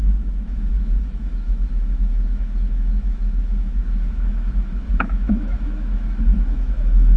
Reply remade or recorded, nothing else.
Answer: remade